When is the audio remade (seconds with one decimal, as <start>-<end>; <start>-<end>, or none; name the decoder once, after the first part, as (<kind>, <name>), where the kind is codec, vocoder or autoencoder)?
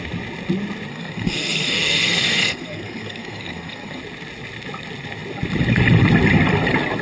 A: 0.9-4.0 (codec, SNAC)